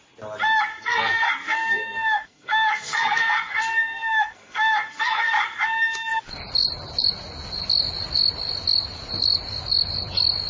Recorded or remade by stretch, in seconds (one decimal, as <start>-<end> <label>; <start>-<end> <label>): 0.0-0.7 recorded; 0.7-5.3 remade; 5.3-10.5 recorded